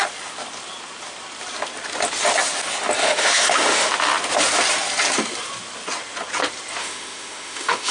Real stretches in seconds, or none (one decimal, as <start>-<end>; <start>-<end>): 0.0-3.0; 3.9-6.8